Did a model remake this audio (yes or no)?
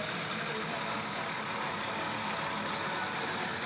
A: no